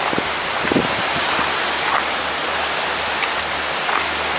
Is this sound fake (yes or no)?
no